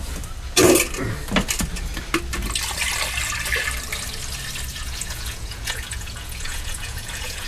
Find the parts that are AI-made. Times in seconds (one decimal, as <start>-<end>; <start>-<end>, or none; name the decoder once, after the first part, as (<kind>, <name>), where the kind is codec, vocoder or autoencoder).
4.7-7.5 (vocoder, Vocos)